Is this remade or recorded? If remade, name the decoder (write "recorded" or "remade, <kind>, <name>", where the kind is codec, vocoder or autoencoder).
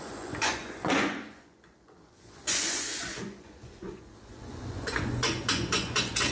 remade, vocoder, Vocos